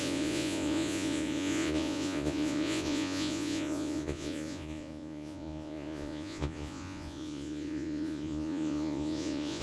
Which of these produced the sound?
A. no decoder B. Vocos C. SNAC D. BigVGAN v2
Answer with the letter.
B